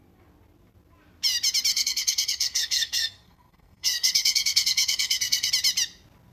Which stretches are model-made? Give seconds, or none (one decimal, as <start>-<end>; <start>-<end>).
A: 1.7-5.5